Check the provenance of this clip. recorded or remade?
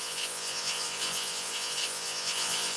remade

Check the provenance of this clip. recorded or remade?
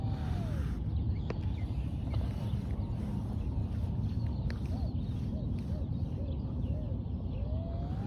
recorded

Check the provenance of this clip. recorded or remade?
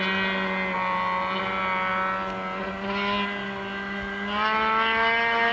recorded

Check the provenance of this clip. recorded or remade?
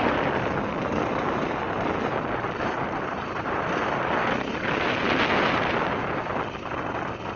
recorded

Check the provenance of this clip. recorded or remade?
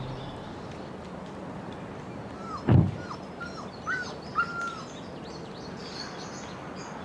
recorded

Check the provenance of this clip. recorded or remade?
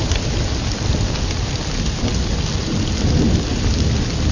recorded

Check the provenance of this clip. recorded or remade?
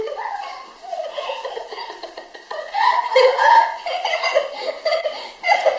remade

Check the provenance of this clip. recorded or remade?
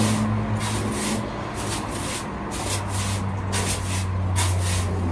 recorded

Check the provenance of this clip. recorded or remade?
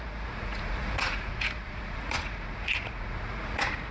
remade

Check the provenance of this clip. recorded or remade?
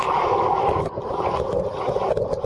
recorded